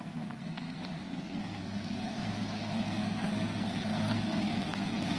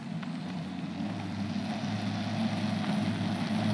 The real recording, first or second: second